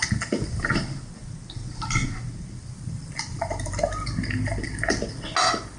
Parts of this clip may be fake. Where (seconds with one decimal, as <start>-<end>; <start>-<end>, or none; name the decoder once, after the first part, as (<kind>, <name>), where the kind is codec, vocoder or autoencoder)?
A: none